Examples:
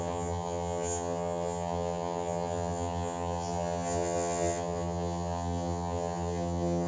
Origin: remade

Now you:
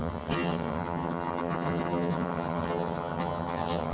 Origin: remade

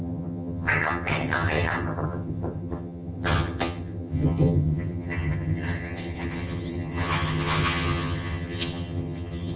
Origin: remade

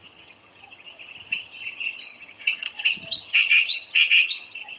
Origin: remade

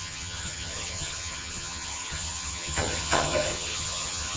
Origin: remade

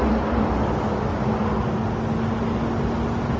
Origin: recorded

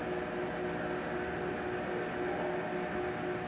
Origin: recorded